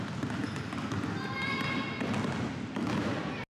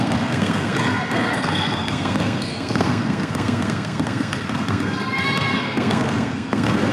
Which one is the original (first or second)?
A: first